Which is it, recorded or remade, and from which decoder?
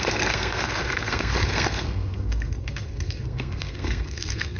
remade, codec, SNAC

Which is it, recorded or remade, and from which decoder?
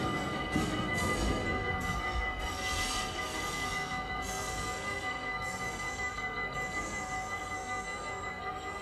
remade, codec, SNAC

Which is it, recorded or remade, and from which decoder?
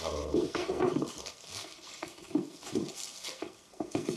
remade, codec, SNAC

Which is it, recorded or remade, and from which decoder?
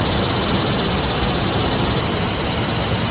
recorded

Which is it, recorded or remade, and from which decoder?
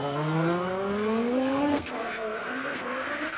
remade, codec, SNAC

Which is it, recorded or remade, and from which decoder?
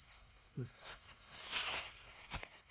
remade, codec, SNAC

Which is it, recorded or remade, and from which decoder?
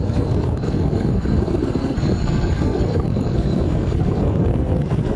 remade, codec, SNAC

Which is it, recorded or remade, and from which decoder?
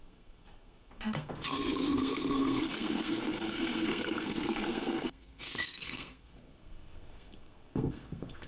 remade, codec, SNAC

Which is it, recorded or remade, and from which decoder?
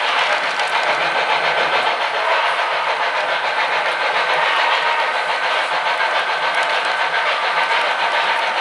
recorded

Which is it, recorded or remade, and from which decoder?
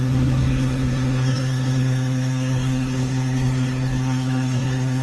remade, codec, SNAC